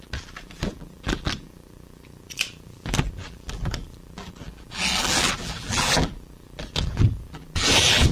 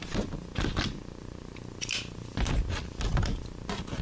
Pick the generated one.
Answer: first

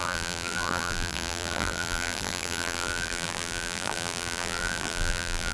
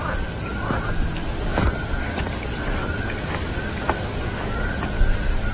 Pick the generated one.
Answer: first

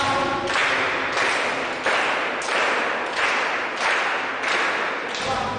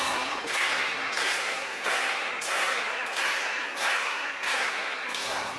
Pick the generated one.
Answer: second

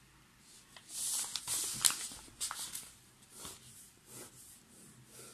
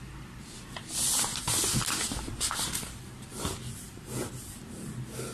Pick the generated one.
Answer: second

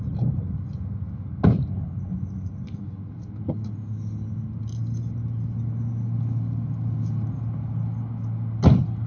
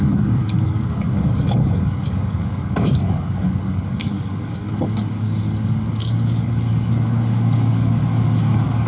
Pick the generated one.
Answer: second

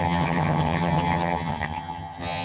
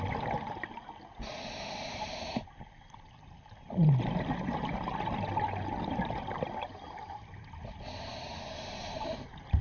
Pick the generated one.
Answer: first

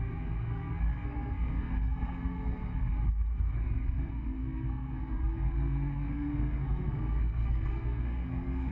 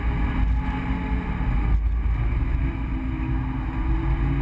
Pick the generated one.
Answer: first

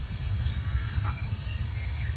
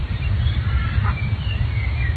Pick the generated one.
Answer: first